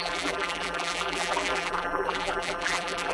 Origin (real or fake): fake